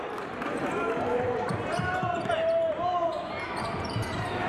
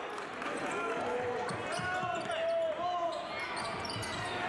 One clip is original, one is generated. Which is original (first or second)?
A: second